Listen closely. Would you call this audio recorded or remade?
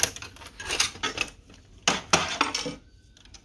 recorded